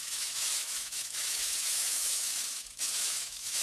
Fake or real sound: fake